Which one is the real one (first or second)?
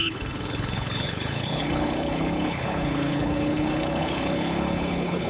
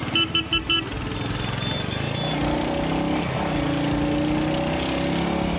second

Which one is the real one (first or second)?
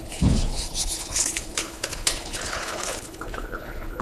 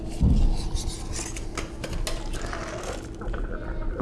second